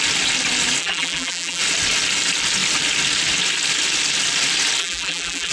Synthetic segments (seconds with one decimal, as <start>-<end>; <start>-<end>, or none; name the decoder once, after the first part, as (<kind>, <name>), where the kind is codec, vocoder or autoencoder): 0.8-1.6 (vocoder, BigVGAN v2); 4.8-5.5